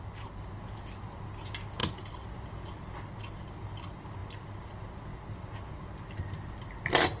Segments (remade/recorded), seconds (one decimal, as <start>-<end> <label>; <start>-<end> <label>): 0.0-7.2 recorded